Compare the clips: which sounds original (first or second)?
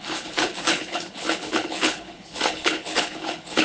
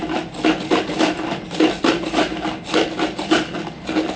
second